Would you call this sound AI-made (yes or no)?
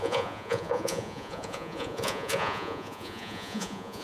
yes